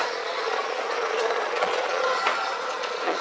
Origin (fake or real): fake